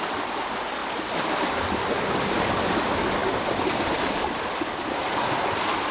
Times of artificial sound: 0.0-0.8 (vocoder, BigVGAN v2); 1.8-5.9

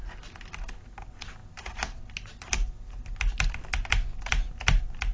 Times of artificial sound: none